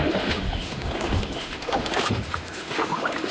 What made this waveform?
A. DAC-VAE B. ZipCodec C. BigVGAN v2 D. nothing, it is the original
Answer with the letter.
A